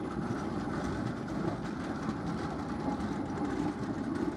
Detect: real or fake fake